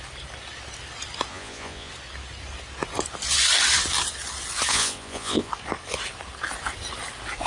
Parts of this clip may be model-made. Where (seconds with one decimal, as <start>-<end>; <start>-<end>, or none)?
1.3-1.9; 4.7-5.5